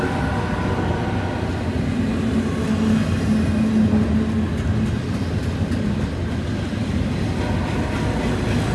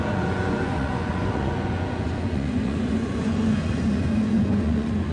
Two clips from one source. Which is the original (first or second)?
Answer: first